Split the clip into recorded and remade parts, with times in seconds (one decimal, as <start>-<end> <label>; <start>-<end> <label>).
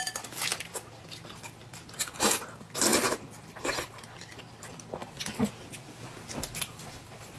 0.0-7.4 recorded